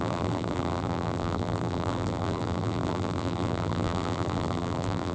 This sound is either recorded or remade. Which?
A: remade